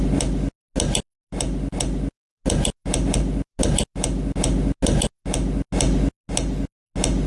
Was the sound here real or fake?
real